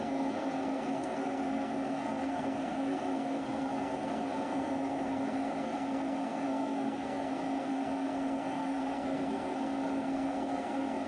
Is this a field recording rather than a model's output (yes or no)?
no